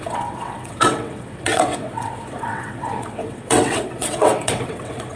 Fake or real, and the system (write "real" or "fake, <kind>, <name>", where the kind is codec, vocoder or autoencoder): fake, vocoder, WaveNeXt